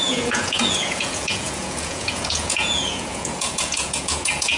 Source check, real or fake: fake